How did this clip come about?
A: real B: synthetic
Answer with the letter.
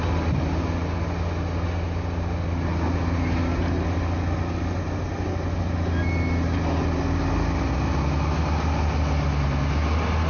A